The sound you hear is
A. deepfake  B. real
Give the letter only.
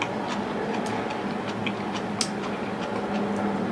B